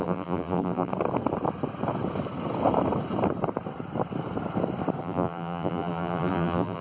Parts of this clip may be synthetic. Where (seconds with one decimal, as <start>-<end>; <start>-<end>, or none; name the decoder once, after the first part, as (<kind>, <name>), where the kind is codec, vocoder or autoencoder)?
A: 0.0-0.9 (vocoder, BigVGAN v2); 5.0-6.8